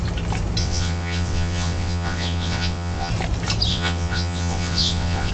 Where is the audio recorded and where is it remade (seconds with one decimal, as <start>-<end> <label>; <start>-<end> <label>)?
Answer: 0.0-0.6 recorded; 0.6-3.1 remade; 3.1-3.7 recorded; 3.7-5.3 remade